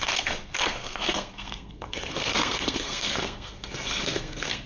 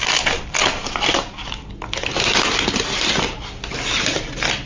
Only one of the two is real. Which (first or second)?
second